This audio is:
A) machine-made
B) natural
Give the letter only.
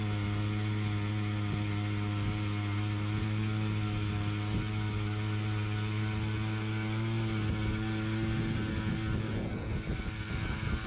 B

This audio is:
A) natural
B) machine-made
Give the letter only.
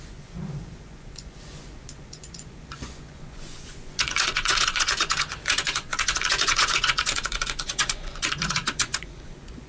B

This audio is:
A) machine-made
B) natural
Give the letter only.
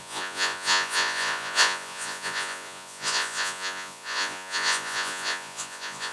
A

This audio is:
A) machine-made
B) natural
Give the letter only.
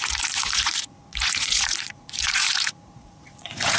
A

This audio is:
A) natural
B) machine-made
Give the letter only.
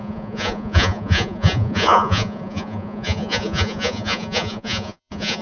B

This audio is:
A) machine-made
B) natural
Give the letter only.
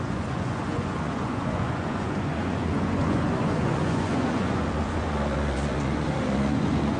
A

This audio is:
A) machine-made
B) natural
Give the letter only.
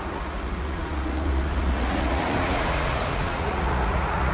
A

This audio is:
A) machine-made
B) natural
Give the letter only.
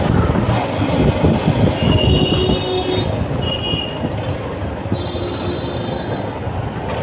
B